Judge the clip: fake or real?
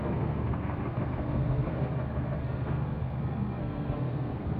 fake